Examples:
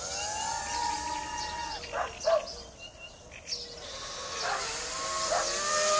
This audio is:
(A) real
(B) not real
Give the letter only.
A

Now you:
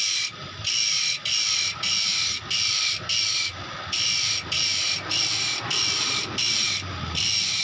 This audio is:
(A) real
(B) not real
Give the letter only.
A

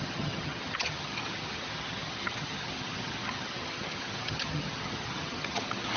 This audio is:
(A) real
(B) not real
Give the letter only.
B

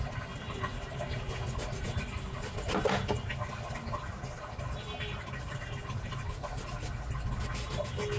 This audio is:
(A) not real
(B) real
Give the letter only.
B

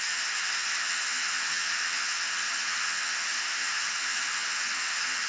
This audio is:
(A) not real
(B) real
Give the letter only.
A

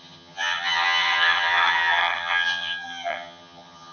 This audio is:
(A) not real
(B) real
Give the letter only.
A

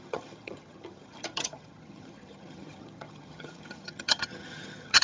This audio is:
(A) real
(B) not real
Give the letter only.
B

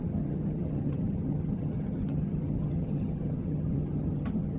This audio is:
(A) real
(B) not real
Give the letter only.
B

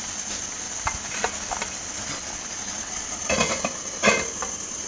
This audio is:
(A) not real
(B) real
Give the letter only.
B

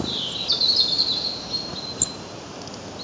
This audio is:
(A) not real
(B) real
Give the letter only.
B